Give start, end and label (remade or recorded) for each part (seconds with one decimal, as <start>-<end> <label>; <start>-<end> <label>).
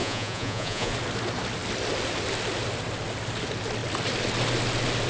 0.0-0.9 remade; 0.9-5.1 recorded